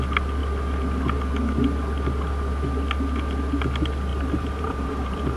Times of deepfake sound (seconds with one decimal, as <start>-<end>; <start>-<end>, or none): 4.1-5.4